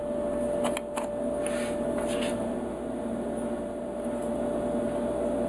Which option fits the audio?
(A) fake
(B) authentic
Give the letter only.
B